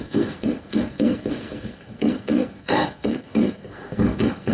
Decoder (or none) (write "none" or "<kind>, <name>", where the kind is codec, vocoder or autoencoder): codec, SNAC